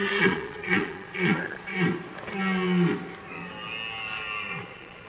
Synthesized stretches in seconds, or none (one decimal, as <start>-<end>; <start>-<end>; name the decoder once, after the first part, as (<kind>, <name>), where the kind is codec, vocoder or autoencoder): 0.0-1.7 (vocoder, Vocos); 4.6-5.1

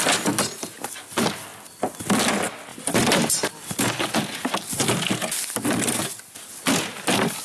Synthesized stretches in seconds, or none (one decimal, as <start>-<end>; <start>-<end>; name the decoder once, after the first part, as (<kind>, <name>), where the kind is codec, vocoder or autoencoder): none

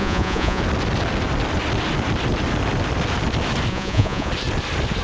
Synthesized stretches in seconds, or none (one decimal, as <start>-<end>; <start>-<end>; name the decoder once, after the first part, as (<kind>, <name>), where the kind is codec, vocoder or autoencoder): 0.0-0.6 (vocoder, Vocos); 3.7-4.3

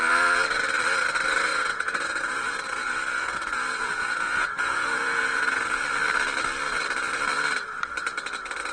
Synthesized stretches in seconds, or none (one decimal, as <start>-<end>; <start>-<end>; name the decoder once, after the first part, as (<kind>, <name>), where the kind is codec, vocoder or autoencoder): 1.5-5.8 (vocoder, Vocos)

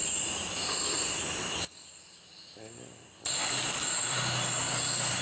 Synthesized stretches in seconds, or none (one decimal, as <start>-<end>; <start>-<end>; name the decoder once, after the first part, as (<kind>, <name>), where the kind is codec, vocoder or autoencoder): none

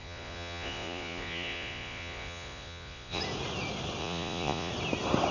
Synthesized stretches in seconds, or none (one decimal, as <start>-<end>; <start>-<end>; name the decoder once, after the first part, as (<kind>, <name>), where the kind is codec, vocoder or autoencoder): 0.0-3.2 (vocoder, Vocos); 4.0-4.7